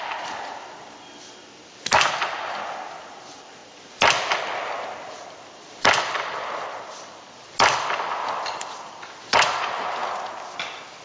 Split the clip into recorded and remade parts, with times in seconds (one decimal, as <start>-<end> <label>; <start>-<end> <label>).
0.0-11.0 recorded

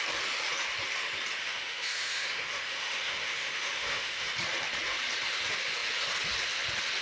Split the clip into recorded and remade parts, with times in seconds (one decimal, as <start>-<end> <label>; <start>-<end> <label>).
0.0-1.4 recorded; 1.4-4.3 remade; 4.3-7.0 recorded

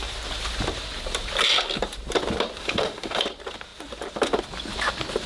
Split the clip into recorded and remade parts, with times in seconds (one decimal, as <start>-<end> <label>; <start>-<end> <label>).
0.0-2.6 recorded; 2.6-3.2 remade; 3.2-5.3 recorded

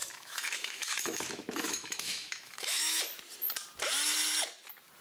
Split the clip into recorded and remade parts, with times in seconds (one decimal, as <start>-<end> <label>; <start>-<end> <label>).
0.0-3.0 remade; 3.0-5.0 recorded

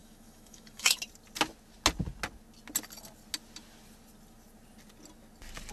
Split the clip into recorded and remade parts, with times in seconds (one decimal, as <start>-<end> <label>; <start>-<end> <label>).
0.0-1.0 remade; 1.0-5.7 recorded